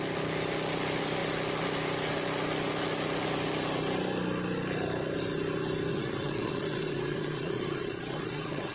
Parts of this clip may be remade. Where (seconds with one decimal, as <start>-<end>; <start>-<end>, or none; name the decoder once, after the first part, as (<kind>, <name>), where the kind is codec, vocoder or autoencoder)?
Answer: 5.9-8.7 (vocoder, Vocos)